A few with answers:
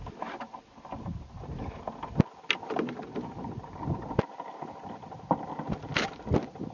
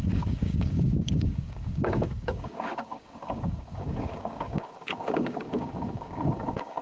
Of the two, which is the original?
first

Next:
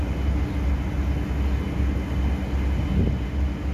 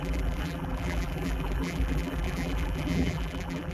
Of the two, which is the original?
first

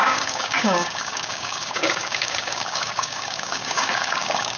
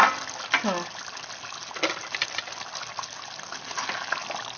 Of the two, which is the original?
second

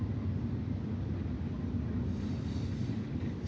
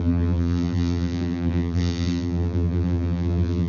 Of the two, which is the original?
first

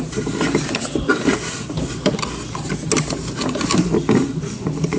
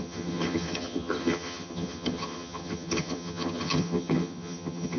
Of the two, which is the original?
first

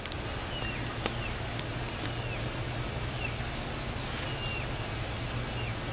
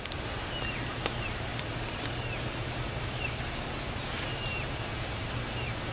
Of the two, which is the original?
first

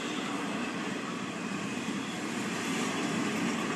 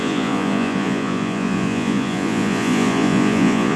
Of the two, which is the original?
first